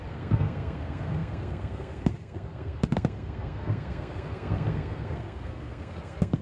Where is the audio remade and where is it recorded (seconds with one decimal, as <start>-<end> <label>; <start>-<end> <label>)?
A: 0.0-6.4 remade